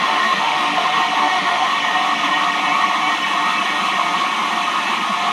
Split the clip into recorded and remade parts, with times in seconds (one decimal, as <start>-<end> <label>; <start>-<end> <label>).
0.0-0.7 remade; 0.7-1.2 recorded; 1.2-1.7 remade; 1.7-5.3 recorded